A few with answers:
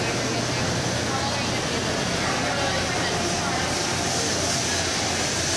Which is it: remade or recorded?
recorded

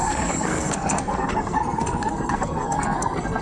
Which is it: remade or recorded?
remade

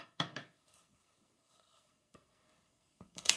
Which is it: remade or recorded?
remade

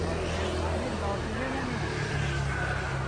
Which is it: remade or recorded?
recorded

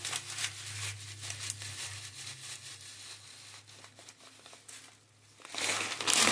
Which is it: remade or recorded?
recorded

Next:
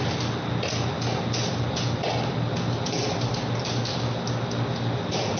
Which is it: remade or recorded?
recorded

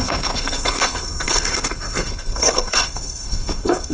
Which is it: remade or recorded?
remade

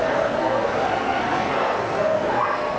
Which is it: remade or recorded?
remade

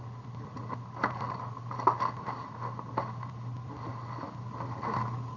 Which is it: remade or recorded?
recorded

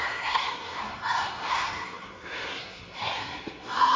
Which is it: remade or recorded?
remade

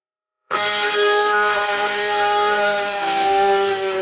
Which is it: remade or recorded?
remade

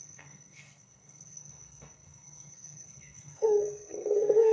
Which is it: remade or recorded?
remade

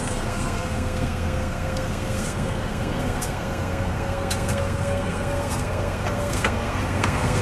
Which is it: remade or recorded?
remade